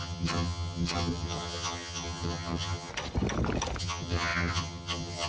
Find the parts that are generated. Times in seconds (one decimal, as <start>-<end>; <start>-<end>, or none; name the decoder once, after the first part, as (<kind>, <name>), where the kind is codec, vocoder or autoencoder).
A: 0.0-2.9 (vocoder, HiFi-GAN); 3.8-5.3